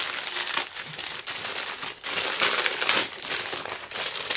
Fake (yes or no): no